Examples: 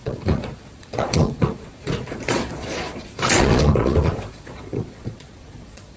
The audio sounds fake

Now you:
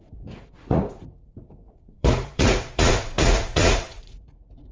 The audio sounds fake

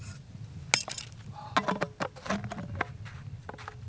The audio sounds real